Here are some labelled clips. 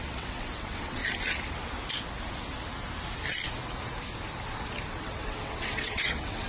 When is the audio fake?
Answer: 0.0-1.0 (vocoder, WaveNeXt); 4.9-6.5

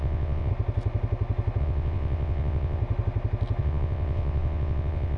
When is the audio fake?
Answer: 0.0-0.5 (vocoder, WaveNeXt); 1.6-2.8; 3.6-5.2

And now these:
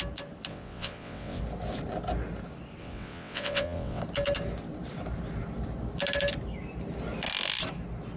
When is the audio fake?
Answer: 0.5-1.4 (vocoder, WaveNeXt); 2.8-4.0

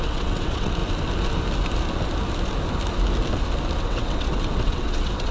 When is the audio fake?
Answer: 0.0-0.8 (vocoder, WaveNeXt); 3.8-5.3